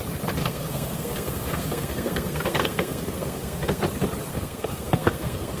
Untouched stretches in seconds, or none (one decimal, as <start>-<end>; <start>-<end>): 0.0-0.4; 3.8-4.3